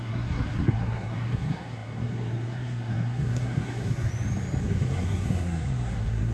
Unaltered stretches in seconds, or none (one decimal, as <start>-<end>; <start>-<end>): 4.1-4.6